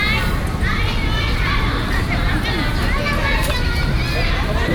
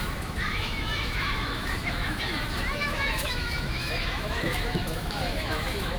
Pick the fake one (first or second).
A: second